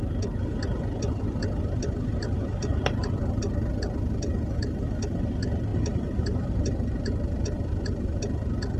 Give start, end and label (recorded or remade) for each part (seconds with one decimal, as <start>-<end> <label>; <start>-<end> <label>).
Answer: 0.0-2.7 recorded; 2.7-3.2 remade; 3.2-5.7 recorded; 5.7-8.2 remade; 8.2-8.8 recorded